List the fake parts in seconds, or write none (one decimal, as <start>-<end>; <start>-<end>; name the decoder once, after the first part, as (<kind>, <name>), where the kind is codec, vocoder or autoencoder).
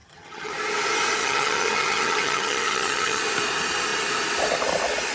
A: 0.0-0.5 (vocoder, HiFi-GAN); 1.2-3.2